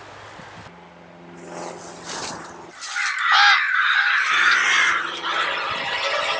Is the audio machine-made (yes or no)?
no